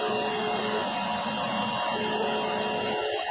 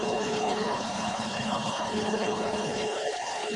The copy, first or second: second